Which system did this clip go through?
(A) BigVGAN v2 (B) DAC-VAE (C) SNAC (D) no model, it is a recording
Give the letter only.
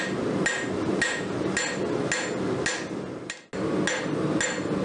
D